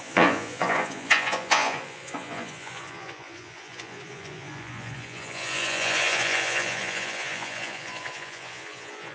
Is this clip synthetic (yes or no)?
yes